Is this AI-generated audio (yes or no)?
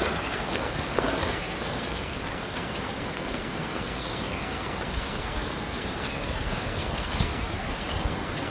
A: yes